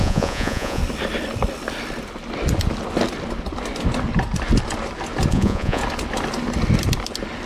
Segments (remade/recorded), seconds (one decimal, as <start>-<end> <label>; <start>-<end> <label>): 0.0-0.8 remade; 0.8-5.3 recorded; 5.3-5.8 remade; 5.8-7.5 recorded